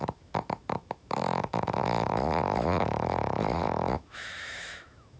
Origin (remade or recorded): remade